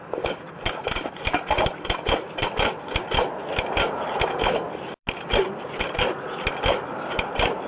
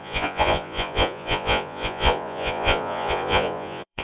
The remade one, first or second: second